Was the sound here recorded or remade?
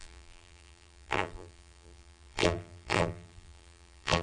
remade